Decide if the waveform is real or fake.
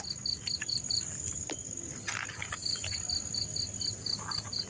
real